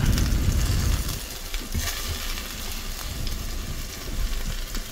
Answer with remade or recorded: recorded